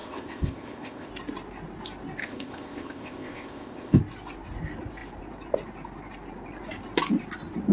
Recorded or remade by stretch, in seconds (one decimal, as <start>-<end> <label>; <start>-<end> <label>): 0.0-1.1 remade; 1.1-2.2 recorded; 2.2-4.0 remade; 4.0-7.7 recorded